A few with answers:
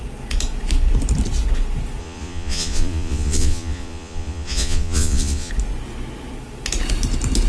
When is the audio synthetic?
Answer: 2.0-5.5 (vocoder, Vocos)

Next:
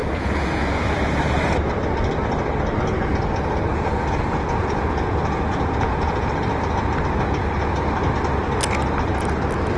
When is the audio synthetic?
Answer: 0.0-1.0 (vocoder, Vocos); 3.7-6.3

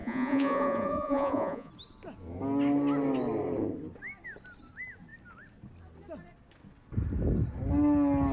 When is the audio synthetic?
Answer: 0.0-1.7 (vocoder, Vocos)

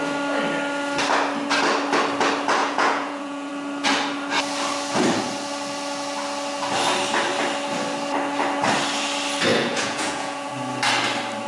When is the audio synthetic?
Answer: 2.6-3.5 (vocoder, Vocos); 9.5-10.5

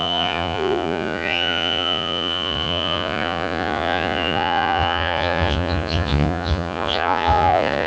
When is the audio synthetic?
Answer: 0.0-7.9 (vocoder, Vocos)

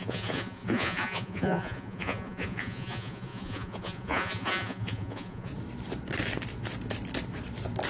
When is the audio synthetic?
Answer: 0.0-5.5 (vocoder, Vocos)

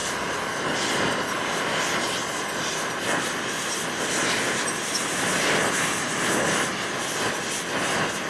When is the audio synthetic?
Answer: none